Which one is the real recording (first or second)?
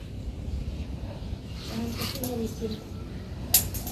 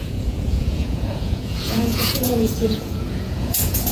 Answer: first